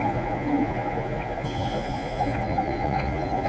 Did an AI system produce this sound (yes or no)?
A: yes